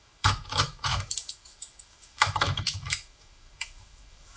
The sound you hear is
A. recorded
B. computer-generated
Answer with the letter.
B